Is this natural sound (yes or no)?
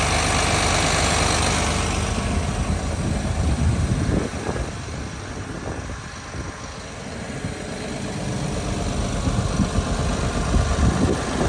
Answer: yes